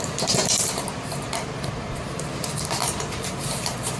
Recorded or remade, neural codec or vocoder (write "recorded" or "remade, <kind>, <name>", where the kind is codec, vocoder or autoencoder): remade, vocoder, BigVGAN v2